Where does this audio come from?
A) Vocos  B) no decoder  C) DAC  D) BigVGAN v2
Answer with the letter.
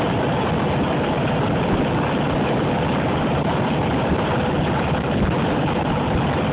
B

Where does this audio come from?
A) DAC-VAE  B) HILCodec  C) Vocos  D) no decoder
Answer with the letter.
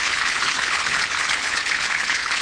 B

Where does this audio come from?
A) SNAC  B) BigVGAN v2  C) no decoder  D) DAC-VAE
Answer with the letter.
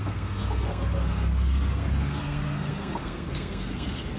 A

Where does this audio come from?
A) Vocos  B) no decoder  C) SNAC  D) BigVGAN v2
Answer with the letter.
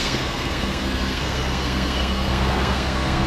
C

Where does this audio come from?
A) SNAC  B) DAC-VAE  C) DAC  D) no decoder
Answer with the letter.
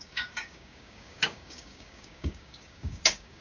C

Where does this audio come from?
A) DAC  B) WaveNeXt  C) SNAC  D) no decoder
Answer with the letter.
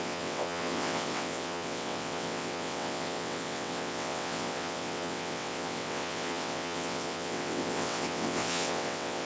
B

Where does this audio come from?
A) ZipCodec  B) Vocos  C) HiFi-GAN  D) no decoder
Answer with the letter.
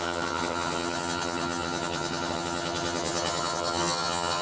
C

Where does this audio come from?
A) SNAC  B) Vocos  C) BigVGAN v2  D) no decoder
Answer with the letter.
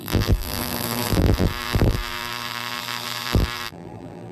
C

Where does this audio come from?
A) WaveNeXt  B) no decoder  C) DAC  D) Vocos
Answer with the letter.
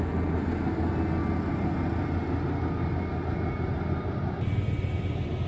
B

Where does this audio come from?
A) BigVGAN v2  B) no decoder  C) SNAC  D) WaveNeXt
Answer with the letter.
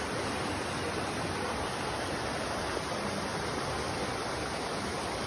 B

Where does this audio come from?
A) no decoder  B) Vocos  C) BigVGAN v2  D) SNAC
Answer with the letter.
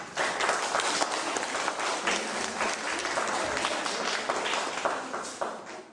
A